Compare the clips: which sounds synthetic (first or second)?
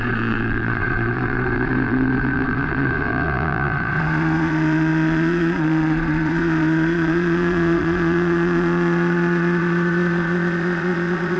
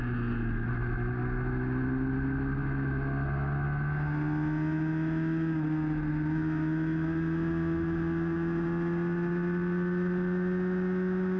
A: first